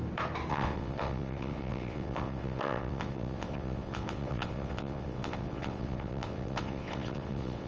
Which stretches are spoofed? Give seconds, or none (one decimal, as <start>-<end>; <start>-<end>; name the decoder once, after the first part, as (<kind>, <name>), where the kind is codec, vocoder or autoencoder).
0.5-7.7 (vocoder, WaveNeXt)

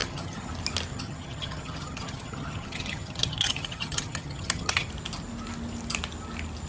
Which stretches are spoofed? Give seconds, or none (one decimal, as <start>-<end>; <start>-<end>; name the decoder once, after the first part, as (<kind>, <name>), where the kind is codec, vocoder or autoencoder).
0.0-0.5 (vocoder, HiFi-GAN); 0.9-4.9

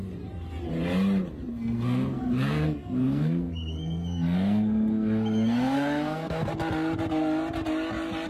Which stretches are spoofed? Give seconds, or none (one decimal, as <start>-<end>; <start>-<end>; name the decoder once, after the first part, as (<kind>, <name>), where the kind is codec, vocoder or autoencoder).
1.5-6.5 (codec, SNAC)

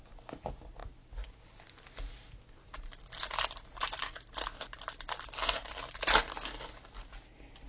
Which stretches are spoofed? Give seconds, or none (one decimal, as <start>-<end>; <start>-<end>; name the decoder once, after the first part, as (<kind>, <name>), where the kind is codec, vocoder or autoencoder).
none

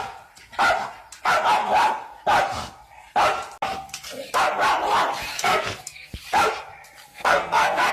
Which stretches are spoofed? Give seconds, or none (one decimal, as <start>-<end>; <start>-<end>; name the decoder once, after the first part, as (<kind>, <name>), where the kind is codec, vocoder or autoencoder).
5.3-6.2 (codec, SNAC); 7.1-7.9

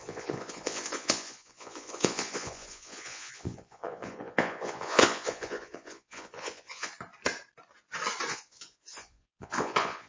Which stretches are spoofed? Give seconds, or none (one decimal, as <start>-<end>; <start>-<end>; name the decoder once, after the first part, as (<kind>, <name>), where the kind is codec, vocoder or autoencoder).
0.0-6.9 (vocoder, Vocos); 8.3-10.1

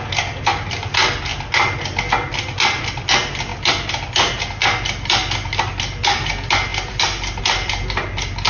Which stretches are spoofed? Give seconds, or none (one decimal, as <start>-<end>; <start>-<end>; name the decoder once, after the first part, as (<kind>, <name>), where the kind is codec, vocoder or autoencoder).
none

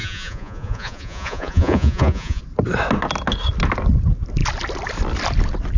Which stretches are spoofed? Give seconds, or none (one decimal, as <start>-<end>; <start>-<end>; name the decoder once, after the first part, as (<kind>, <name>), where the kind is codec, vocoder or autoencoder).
0.0-2.4 (vocoder, Vocos)